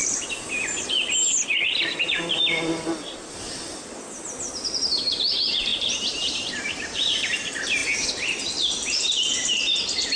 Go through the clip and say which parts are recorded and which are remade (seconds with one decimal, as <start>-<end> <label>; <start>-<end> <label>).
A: 0.0-4.8 recorded; 4.8-7.8 remade; 7.8-8.9 recorded; 8.9-10.2 remade